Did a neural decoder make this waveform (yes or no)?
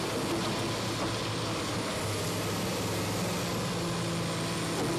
no